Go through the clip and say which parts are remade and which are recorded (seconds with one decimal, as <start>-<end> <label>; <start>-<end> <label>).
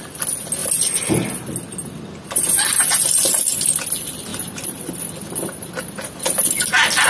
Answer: 0.0-4.3 recorded; 4.3-4.9 remade; 4.9-7.1 recorded